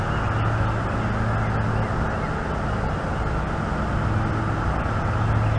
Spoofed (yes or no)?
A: no